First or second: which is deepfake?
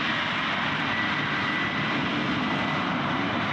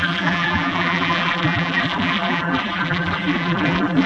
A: second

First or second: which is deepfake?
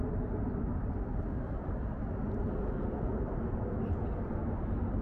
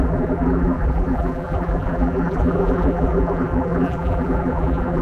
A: second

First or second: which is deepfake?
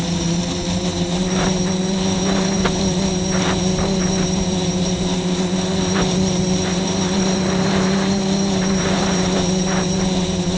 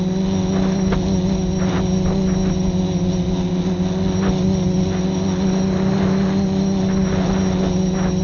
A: first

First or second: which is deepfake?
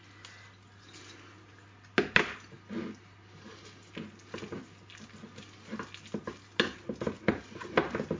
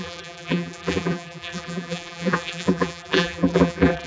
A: second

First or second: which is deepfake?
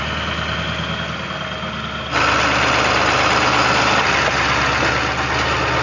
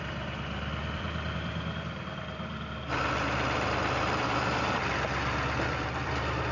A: second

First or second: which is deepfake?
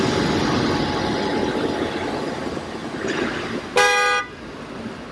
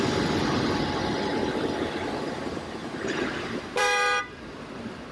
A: second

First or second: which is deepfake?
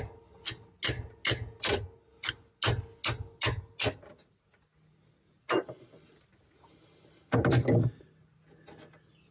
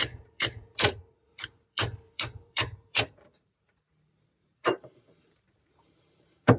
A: second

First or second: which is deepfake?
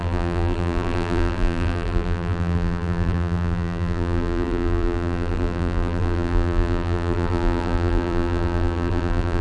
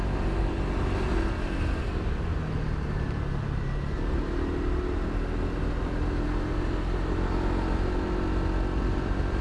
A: first